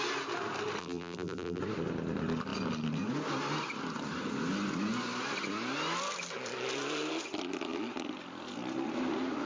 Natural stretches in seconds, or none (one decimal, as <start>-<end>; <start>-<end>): 0.0-0.8; 1.6-9.5